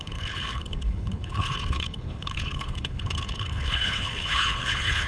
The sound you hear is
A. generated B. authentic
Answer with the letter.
A